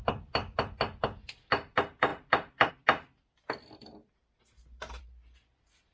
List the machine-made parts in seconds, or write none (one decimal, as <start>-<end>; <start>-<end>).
2.1-2.7; 4.0-5.0